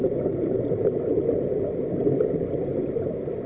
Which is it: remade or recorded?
recorded